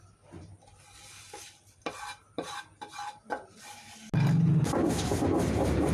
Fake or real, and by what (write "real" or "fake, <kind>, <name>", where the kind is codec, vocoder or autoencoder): real